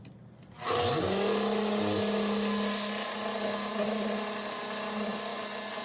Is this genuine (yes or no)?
yes